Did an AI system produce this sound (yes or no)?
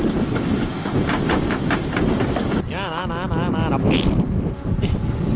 no